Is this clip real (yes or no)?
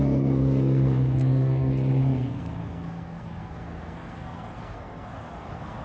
no